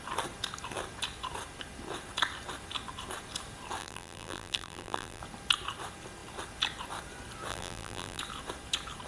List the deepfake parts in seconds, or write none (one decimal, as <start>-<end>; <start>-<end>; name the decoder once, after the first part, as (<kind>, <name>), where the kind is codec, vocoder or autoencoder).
3.8-5.2 (vocoder, BigVGAN v2); 7.5-8.2